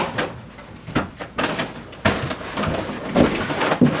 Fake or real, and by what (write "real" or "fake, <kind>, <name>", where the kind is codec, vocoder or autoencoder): real